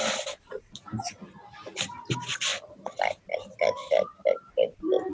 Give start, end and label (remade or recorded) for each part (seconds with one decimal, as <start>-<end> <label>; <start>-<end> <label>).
0.0-5.1 recorded